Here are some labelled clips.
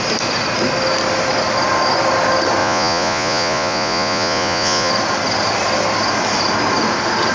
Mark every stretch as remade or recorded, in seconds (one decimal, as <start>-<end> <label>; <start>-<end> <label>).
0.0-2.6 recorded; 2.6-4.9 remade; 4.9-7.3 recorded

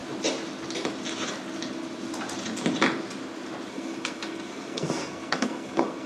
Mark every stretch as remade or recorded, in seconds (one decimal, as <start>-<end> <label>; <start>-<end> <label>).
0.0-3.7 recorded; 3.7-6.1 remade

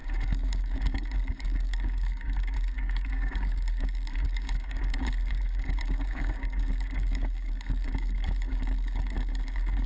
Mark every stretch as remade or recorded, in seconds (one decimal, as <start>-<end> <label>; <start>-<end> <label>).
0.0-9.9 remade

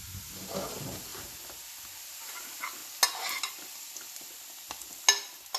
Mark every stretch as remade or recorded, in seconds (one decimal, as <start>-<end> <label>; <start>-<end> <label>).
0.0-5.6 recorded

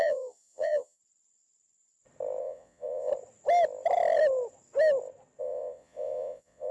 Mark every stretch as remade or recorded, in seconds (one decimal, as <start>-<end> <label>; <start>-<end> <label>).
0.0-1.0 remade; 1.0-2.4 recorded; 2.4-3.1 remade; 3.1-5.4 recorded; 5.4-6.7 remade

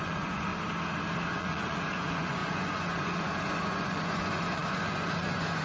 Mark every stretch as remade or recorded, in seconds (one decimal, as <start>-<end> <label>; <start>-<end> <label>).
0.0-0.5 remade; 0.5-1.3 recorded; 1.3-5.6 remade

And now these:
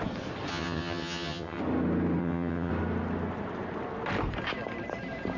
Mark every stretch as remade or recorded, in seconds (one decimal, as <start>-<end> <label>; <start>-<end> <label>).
0.0-0.5 recorded; 0.5-1.6 remade; 1.6-2.2 recorded; 2.2-2.7 remade; 2.7-5.4 recorded

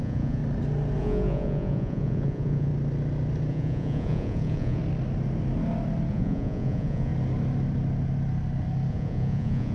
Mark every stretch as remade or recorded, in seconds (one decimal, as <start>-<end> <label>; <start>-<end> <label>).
0.0-0.4 remade; 0.4-1.0 recorded; 1.0-2.7 remade; 2.7-3.5 recorded; 3.5-4.8 remade; 4.8-6.1 recorded; 6.1-7.1 remade; 7.1-8.9 recorded; 8.9-9.7 remade